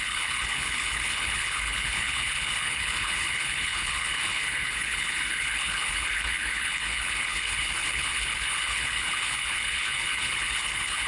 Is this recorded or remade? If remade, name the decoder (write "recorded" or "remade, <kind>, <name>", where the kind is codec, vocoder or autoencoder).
remade, codec, HILCodec